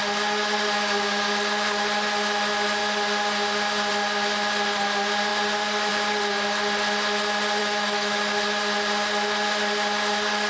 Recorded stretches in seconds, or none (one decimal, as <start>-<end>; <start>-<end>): 0.0-7.6; 8.2-10.5